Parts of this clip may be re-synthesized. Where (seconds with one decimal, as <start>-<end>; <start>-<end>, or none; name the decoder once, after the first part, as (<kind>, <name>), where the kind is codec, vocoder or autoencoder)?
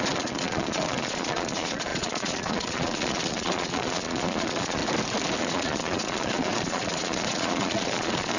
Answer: 0.0-4.8 (vocoder, Vocos); 5.4-8.4